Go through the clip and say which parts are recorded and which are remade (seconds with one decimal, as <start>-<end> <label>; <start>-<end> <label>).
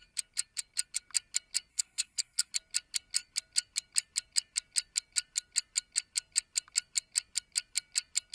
0.0-1.7 recorded; 1.7-2.5 remade; 2.5-8.3 recorded